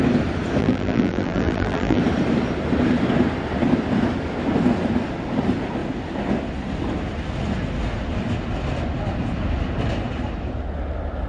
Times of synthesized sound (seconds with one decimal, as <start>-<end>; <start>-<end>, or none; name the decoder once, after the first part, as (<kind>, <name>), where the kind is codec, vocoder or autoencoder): 0.6-2.0 (vocoder, BigVGAN v2)